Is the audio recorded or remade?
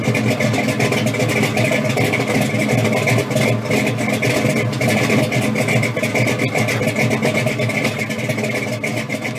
recorded